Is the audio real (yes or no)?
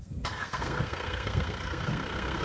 no